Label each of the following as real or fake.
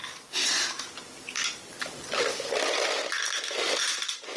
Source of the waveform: real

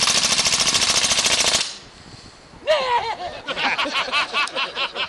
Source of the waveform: real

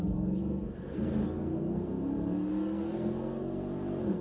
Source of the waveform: fake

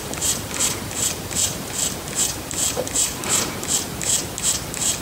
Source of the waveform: fake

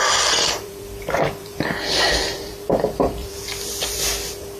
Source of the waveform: fake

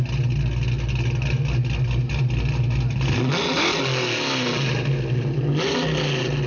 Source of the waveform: real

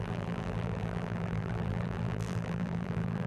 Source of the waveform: fake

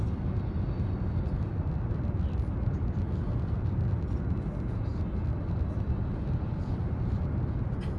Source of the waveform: real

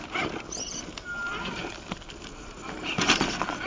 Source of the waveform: real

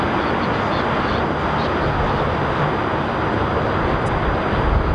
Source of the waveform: real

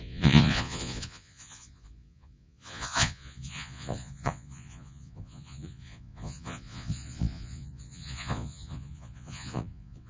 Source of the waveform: fake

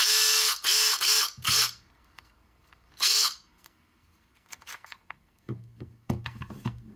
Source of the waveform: fake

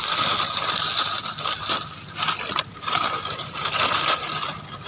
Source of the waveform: real